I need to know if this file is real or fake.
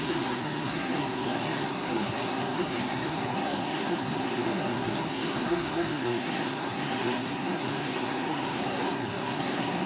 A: fake